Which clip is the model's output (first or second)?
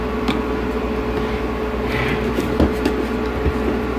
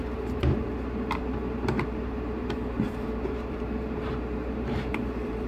second